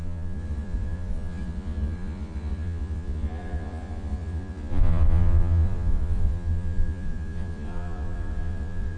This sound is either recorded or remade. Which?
remade